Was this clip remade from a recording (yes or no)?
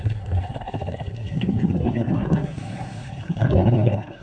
yes